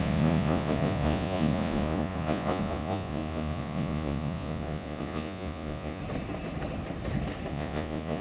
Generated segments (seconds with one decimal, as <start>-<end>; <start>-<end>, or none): 0.0-6.0; 7.5-8.2